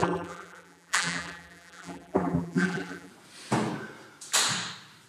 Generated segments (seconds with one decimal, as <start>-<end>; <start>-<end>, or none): 0.0-3.1